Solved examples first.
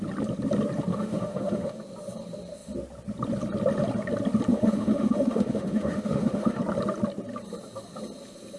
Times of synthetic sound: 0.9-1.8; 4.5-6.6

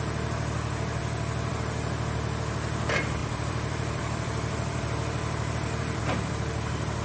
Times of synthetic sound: 3.2-6.0